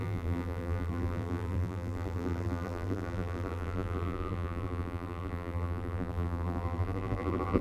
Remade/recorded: remade